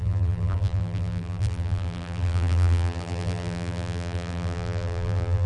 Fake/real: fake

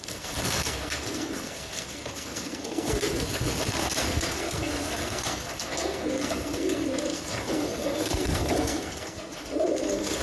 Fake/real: fake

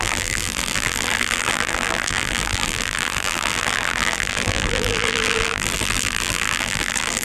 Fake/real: fake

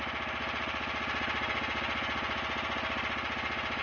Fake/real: real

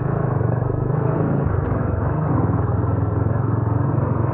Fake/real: fake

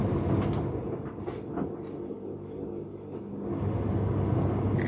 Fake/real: real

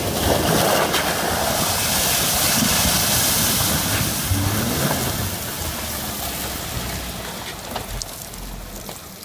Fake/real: real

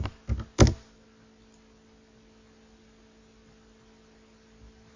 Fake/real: real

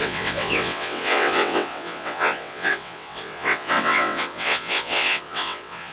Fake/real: fake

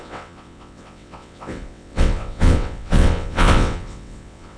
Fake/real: fake